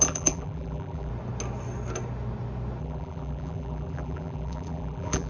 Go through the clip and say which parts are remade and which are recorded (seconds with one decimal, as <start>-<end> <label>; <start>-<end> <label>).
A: 0.0-1.1 remade; 1.1-2.8 recorded; 2.8-5.3 remade